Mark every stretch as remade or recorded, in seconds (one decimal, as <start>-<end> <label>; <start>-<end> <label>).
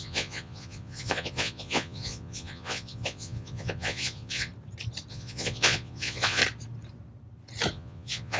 0.0-4.5 remade; 4.5-5.1 recorded; 5.1-6.4 remade; 6.4-7.7 recorded; 7.7-8.4 remade